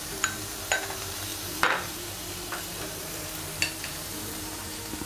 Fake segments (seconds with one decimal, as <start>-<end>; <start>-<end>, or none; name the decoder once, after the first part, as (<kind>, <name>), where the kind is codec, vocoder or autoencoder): 0.0-5.1 (vocoder, BigVGAN v2)